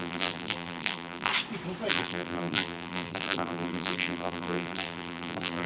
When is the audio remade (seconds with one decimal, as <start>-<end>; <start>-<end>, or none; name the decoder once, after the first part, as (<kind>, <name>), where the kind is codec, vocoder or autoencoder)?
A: 0.0-1.3 (vocoder, BigVGAN v2); 1.9-5.7